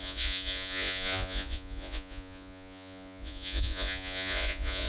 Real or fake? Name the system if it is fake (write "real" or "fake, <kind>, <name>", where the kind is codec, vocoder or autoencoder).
fake, vocoder, Vocos